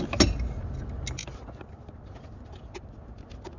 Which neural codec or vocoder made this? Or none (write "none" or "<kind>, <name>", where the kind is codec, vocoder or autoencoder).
none